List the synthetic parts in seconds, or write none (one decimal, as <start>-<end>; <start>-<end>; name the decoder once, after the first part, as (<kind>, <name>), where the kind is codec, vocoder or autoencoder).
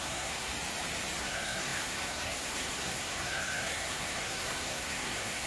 0.0-0.5 (codec, SNAC); 1.2-5.5